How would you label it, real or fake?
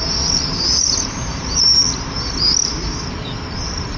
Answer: fake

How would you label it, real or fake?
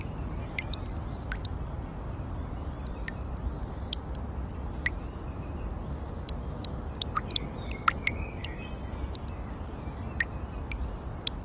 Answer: real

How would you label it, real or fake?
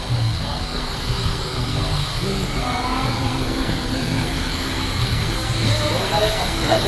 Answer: fake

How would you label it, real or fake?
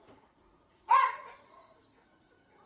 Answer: fake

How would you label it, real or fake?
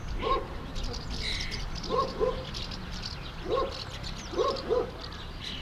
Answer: fake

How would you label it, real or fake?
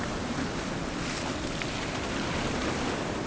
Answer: real